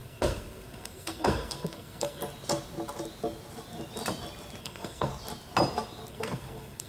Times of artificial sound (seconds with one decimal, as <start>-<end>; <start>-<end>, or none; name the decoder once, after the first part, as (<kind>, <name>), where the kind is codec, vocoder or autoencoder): 0.0-2.2 (codec, SNAC); 4.6-5.1; 6.1-6.9